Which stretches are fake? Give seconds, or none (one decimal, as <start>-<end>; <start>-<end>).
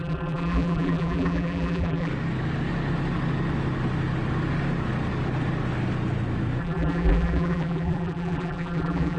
0.0-2.1; 6.6-9.2